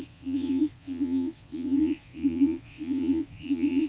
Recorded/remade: remade